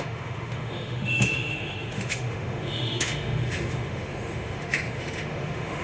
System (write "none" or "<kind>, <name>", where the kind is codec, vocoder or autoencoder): autoencoder, DAC-VAE